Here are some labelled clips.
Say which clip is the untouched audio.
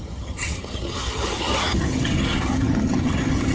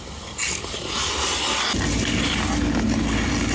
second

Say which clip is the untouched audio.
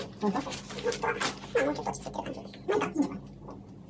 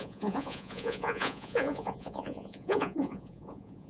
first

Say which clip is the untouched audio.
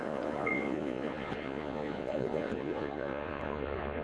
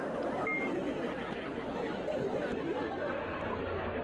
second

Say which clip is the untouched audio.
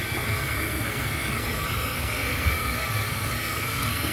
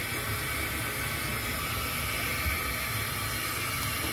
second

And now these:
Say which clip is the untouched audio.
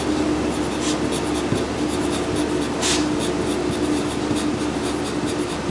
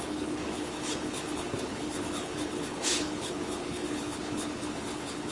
first